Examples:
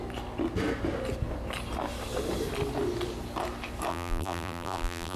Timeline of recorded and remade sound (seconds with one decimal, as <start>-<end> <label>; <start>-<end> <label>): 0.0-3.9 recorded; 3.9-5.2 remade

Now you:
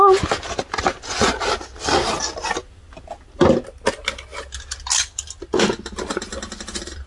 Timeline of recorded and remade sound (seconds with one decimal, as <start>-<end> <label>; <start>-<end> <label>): 0.0-0.9 recorded; 0.9-1.4 remade; 1.4-7.1 recorded

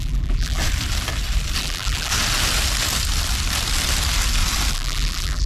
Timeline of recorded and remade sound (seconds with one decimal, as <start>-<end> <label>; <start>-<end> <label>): 0.0-0.6 remade; 0.6-1.6 recorded; 1.6-2.1 remade; 2.1-4.7 recorded; 4.7-5.5 remade

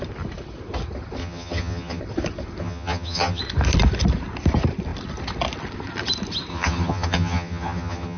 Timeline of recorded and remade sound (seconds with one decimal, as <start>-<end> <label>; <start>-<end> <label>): 0.0-1.2 recorded; 1.2-2.0 remade; 2.0-2.6 recorded; 2.6-3.4 remade; 3.4-6.5 recorded; 6.5-8.2 remade